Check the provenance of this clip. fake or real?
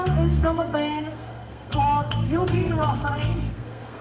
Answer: fake